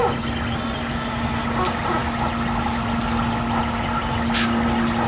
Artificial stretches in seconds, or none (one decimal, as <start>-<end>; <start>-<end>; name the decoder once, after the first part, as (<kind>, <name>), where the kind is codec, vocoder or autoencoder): none